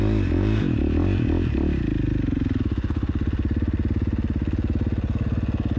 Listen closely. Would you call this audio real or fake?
real